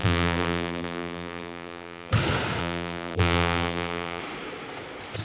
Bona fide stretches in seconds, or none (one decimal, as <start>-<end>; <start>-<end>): 2.1-2.6; 4.2-5.2